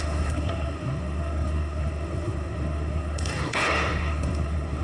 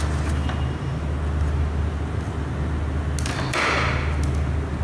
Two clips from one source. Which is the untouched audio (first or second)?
second